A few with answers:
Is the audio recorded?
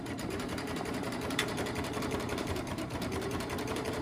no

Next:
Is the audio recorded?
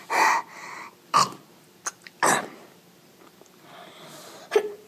no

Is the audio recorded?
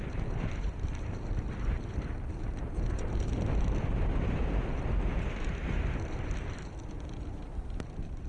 no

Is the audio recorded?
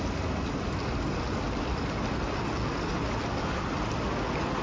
yes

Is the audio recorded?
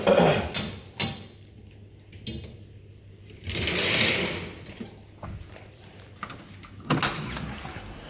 yes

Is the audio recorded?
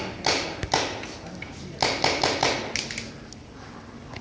yes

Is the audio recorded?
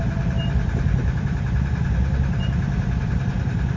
no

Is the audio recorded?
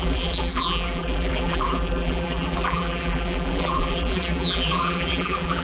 no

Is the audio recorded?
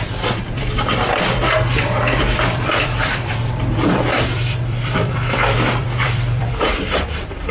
no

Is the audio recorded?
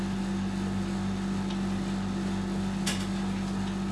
yes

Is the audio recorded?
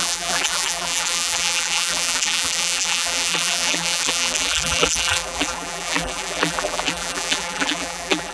no